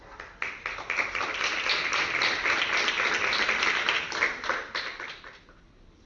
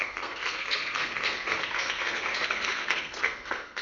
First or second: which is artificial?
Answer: second